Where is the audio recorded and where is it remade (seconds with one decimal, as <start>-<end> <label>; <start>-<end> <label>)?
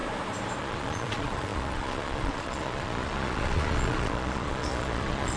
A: 0.0-0.6 recorded; 0.6-5.4 remade